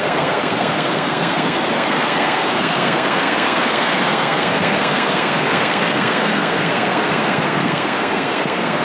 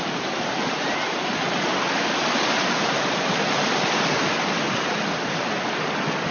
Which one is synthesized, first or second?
first